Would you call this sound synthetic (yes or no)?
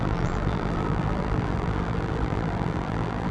yes